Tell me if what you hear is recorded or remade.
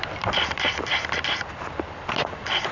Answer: recorded